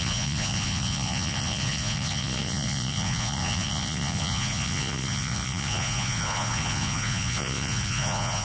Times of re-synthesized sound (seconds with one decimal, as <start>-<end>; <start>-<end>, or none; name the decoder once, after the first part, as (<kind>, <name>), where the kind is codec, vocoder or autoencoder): 0.0-8.4 (vocoder, Vocos)